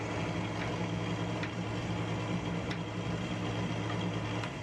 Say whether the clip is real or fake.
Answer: real